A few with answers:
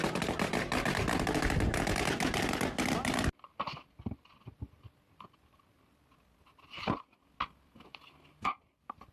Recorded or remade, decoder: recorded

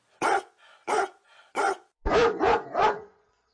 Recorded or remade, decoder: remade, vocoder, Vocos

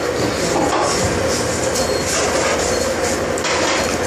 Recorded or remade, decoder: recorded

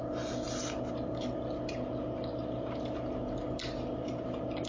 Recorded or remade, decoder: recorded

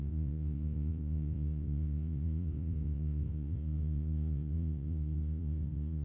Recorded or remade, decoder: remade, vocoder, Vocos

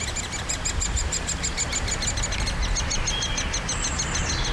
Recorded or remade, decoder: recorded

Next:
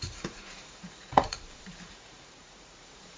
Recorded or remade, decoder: remade, vocoder, Vocos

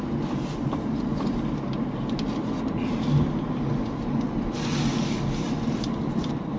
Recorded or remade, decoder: recorded